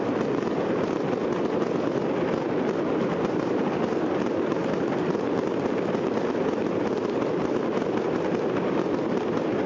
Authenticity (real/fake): real